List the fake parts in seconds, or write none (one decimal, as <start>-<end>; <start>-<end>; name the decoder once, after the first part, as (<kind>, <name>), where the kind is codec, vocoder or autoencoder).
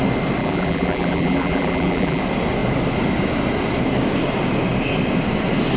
0.4-2.2 (vocoder, BigVGAN v2)